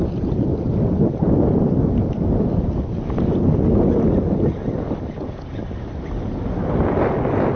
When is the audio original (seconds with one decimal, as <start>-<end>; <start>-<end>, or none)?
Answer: 0.5-5.1; 5.6-7.6